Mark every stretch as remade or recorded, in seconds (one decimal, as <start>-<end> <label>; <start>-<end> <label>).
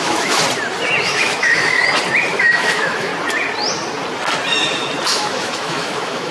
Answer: 0.0-0.4 remade; 0.4-1.0 recorded; 1.0-1.8 remade; 1.8-2.3 recorded; 2.3-3.1 remade; 3.1-5.1 recorded; 5.1-6.3 remade